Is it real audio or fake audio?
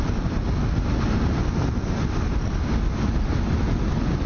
real